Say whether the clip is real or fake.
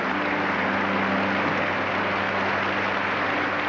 real